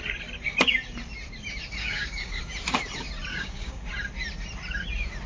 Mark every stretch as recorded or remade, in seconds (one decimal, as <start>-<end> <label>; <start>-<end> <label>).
0.0-1.8 recorded; 1.8-2.4 remade; 2.4-3.3 recorded; 3.3-3.9 remade; 3.9-5.3 recorded